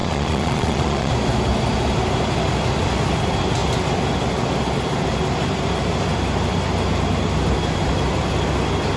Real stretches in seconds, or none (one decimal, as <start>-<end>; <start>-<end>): 1.1-9.0